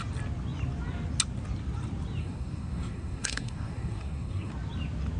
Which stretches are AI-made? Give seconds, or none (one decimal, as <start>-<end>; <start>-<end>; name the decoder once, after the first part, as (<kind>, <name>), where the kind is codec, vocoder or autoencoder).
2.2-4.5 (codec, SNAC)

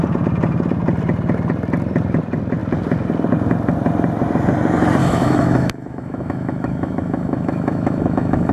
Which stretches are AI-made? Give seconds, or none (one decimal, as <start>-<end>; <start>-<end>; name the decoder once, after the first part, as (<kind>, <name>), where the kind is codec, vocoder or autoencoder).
5.0-8.5 (autoencoder, DAC-VAE)

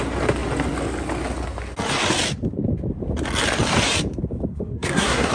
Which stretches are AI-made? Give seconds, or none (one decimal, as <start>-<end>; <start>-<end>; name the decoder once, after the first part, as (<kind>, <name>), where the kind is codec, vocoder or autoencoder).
4.5-5.3 (codec, SNAC)

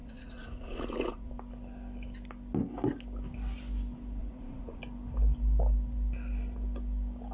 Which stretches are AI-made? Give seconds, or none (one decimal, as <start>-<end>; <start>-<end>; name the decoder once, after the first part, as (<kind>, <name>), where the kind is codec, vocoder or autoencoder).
0.0-1.3 (vocoder, Vocos); 4.2-4.8